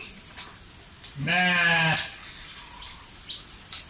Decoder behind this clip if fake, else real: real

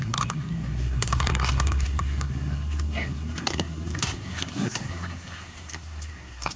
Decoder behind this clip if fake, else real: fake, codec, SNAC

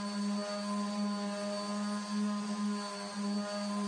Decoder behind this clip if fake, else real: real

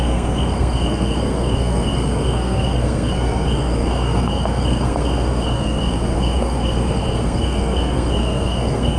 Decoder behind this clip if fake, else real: fake, codec, SNAC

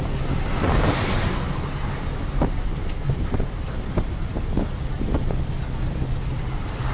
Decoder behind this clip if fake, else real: real